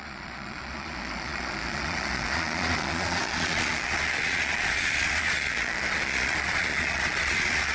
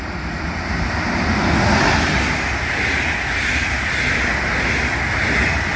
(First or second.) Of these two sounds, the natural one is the second